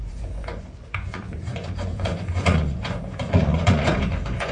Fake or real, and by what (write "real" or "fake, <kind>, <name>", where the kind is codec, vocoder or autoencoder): fake, vocoder, Vocos